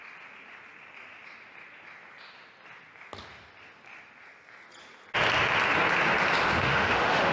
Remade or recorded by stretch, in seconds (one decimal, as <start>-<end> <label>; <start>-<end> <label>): 0.0-6.5 recorded; 6.5-7.3 remade